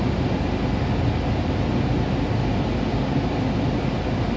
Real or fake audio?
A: real